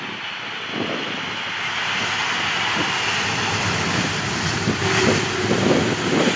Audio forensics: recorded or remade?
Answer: recorded